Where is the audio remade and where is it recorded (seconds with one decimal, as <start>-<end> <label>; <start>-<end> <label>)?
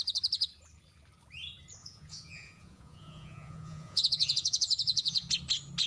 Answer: 0.0-1.8 recorded; 1.8-5.3 remade; 5.3-5.9 recorded